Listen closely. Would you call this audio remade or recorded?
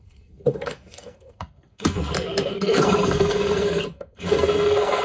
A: remade